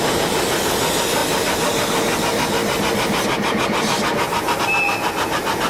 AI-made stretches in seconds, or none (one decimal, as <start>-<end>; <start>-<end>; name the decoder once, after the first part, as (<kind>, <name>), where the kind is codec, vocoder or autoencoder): none